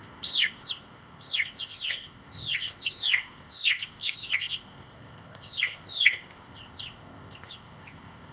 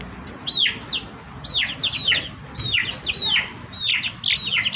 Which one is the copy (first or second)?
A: first